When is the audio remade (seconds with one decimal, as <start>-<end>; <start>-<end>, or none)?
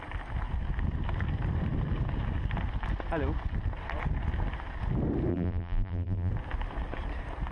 5.3-6.3